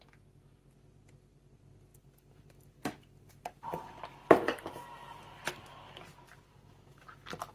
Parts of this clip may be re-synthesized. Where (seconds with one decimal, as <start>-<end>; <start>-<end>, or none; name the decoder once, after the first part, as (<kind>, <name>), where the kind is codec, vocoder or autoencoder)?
none